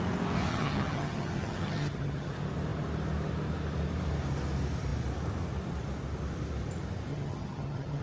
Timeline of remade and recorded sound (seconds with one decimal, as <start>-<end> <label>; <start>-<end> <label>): 0.0-0.5 recorded; 0.5-2.3 remade; 2.3-7.1 recorded; 7.1-8.0 remade